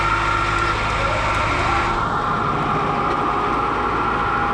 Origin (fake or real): real